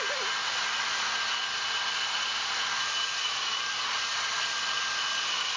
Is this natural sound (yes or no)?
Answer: yes